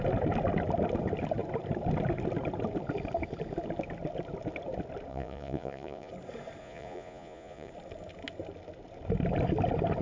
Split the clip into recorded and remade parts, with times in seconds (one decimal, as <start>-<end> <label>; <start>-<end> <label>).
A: 0.0-5.1 recorded; 5.1-6.1 remade; 6.1-6.6 recorded; 6.6-7.7 remade; 7.7-10.0 recorded